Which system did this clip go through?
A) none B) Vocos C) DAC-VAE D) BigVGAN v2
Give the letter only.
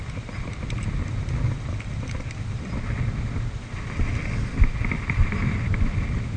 A